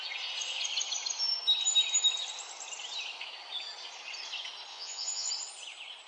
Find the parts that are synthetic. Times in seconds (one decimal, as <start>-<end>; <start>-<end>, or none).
4.7-5.3